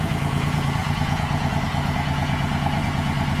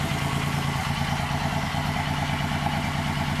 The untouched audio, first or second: second